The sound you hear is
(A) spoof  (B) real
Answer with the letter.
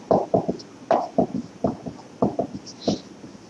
B